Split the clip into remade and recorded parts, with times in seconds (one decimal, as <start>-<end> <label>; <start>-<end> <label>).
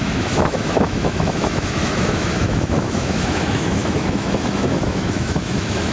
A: 0.0-5.9 remade